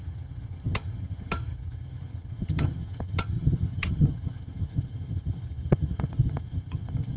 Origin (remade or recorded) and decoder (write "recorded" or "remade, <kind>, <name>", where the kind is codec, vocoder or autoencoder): remade, vocoder, HiFi-GAN